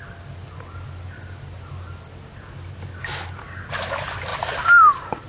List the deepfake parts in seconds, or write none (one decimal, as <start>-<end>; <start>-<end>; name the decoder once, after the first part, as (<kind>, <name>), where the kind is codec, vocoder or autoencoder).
4.3-5.3 (vocoder, BigVGAN v2)